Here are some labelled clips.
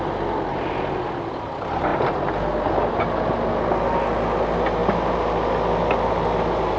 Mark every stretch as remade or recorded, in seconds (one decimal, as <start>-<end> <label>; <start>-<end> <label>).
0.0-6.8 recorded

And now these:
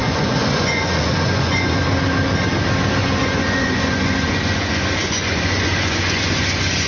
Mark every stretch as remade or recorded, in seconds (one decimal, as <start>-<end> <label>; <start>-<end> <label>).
0.0-1.7 remade; 1.7-3.0 recorded; 3.0-6.9 remade

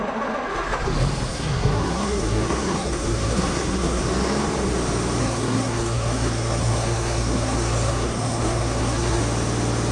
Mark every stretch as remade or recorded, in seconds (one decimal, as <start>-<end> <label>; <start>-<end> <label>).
0.0-1.3 recorded; 1.3-4.0 remade; 4.0-5.2 recorded; 5.2-9.2 remade; 9.2-9.9 recorded

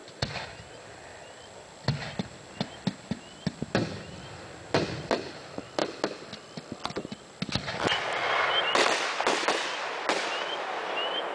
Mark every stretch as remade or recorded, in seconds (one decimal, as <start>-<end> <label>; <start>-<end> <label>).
0.0-11.3 recorded